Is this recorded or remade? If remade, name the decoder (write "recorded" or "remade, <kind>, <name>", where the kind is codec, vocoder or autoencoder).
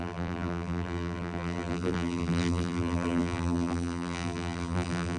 remade, vocoder, BigVGAN v2